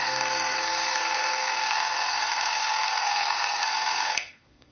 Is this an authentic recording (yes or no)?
no